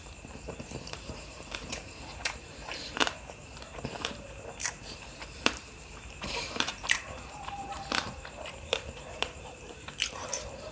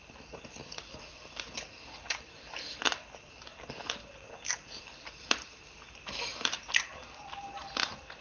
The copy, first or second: first